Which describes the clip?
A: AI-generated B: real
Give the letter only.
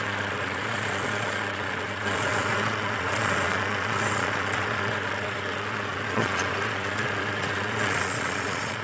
A